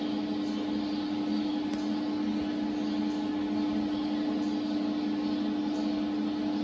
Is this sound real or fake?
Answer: real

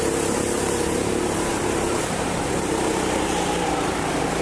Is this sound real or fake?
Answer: fake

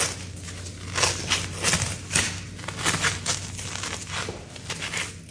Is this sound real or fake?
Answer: real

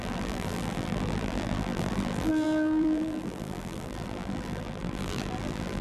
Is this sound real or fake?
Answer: fake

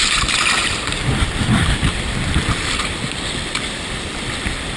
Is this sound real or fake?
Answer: fake